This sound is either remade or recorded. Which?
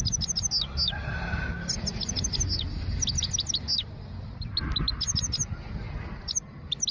recorded